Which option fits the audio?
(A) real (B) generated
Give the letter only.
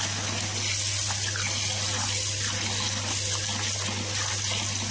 A